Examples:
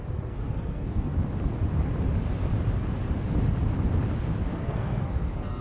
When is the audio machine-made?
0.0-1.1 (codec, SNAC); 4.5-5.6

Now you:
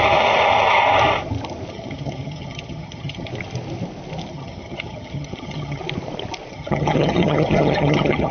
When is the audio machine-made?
1.7-3.3 (vocoder, HiFi-GAN); 4.3-5.8; 6.5-8.3

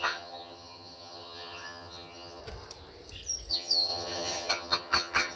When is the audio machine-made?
0.0-2.4 (vocoder, HiFi-GAN); 3.5-5.4